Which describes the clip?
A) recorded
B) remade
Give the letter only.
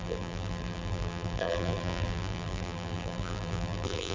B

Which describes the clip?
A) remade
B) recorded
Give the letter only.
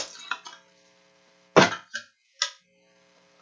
B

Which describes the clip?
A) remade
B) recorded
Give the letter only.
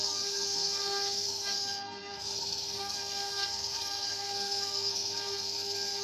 A